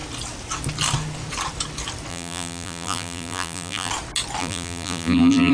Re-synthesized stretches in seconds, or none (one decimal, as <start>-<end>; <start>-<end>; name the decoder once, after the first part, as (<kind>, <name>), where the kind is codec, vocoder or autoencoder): 2.1-3.9 (vocoder, BigVGAN v2); 4.4-5.5